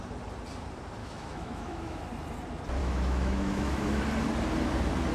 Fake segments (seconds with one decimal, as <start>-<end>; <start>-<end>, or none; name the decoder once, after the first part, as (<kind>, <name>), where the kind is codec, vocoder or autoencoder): 1.0-2.0 (autoencoder, DAC-VAE); 2.8-4.0